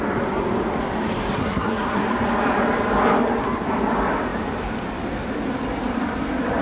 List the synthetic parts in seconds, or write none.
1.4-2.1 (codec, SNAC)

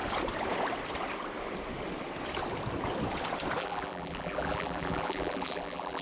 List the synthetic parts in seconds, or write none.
3.6-6.0 (vocoder, BigVGAN v2)

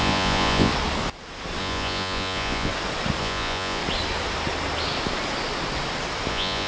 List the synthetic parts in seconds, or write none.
0.0-0.7 (vocoder, Vocos); 1.6-2.7; 3.2-3.8; 6.3-6.7

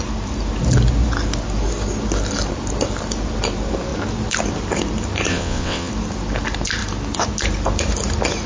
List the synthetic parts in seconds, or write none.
5.3-5.9 (vocoder, WaveNeXt)